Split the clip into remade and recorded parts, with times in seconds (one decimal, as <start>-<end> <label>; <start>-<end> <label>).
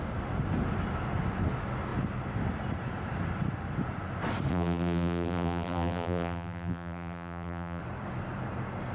0.0-4.5 recorded; 4.5-7.8 remade; 7.8-8.9 recorded